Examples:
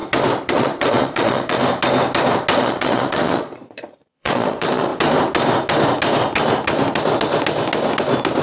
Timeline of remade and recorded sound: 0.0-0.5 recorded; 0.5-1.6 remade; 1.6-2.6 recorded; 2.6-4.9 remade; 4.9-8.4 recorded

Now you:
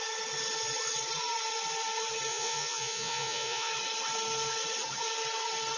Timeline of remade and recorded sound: 0.0-2.3 recorded; 2.3-3.7 remade; 3.7-5.8 recorded